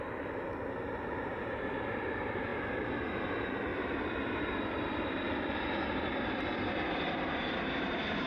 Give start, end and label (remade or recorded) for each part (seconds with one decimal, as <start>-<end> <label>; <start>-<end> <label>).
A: 0.0-3.7 remade; 3.7-7.6 recorded; 7.6-8.3 remade